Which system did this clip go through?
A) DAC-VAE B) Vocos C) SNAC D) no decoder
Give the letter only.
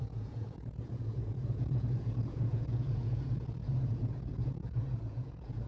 B